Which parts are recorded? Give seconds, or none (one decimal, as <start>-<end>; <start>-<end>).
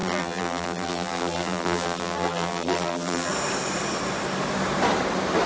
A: 3.3-5.5